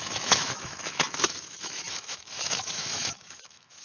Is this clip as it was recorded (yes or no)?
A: no